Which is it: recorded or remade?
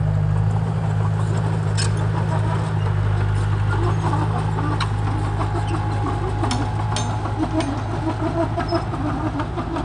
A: recorded